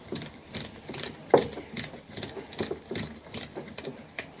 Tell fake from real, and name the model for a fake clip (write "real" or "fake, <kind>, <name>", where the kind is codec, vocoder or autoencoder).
real